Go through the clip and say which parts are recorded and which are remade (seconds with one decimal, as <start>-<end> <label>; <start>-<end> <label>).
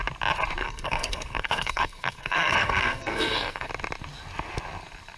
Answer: 0.0-0.6 recorded; 0.6-3.7 remade; 3.7-5.2 recorded